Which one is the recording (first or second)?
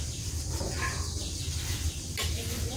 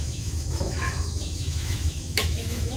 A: first